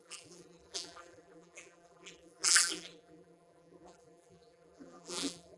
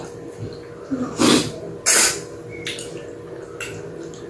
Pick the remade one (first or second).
first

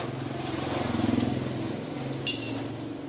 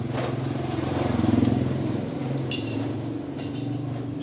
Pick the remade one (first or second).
second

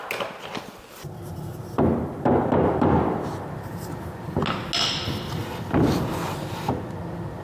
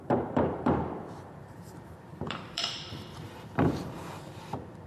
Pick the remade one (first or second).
second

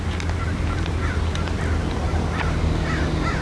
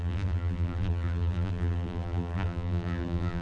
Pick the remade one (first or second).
second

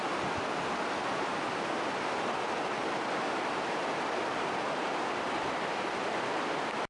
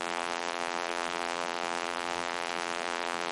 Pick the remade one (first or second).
second